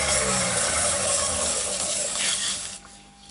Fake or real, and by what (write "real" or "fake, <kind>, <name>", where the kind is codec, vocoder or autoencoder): fake, codec, DAC